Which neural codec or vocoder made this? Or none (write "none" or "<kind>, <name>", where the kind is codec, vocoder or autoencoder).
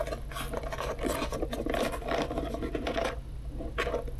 none